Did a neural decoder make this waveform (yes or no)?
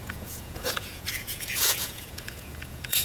yes